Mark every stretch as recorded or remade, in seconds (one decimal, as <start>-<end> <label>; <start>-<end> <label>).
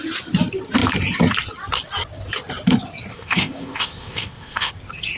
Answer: 0.0-3.1 recorded; 3.1-4.7 remade; 4.7-5.2 recorded